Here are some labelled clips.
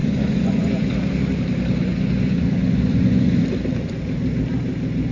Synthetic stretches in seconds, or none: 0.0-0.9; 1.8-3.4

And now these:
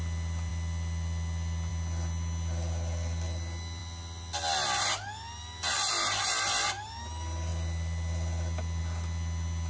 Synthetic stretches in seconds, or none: none